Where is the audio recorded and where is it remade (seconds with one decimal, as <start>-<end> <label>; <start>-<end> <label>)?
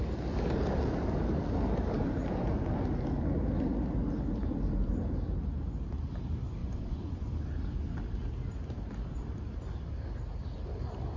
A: 0.0-6.6 recorded; 6.6-7.3 remade; 7.3-11.2 recorded